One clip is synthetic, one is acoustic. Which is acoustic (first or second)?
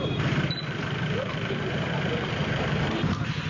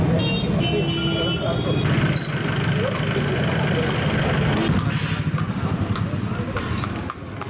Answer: second